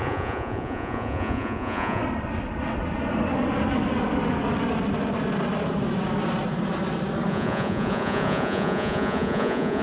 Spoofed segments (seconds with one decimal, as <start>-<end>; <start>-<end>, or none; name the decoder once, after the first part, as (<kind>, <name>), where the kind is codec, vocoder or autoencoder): 0.0-2.0 (vocoder, Vocos); 7.3-9.8